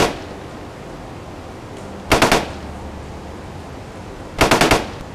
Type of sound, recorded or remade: recorded